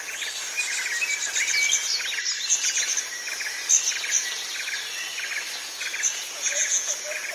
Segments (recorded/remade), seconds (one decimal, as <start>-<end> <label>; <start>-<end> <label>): 0.0-6.1 recorded; 6.1-7.3 remade